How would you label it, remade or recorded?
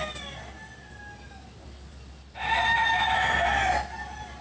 recorded